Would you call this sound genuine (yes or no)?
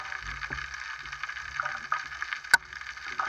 yes